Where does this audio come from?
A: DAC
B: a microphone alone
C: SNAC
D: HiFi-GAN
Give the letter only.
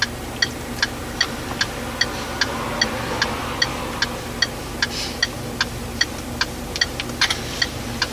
B